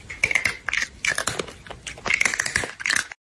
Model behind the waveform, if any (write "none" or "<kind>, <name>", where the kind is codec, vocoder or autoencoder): none